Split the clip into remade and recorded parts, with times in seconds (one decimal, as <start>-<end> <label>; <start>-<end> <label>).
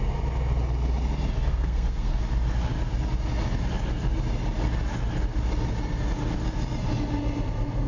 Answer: 0.0-1.5 recorded; 1.5-2.2 remade; 2.2-7.9 recorded